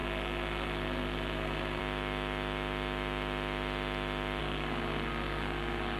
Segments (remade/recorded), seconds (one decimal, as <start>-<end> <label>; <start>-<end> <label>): 0.0-1.8 remade; 1.8-4.4 recorded; 4.4-6.0 remade